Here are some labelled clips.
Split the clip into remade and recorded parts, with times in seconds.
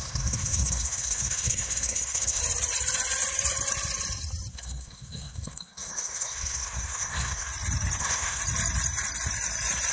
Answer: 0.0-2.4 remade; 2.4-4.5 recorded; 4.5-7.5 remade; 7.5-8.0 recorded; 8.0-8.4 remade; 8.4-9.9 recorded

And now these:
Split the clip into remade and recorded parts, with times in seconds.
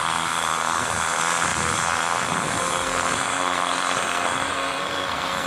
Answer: 0.0-5.5 remade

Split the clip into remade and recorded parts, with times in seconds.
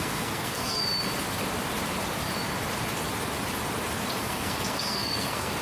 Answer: 0.0-0.8 remade; 0.8-4.2 recorded; 4.2-5.6 remade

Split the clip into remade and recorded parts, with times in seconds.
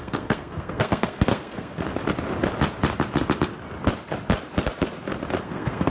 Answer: 0.0-1.9 remade; 1.9-5.4 recorded; 5.4-5.9 remade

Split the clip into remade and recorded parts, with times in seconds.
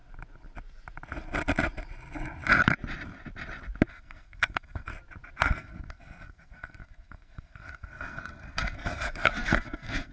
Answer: 0.0-3.9 recorded; 3.9-4.9 remade; 4.9-5.4 recorded; 5.4-10.1 remade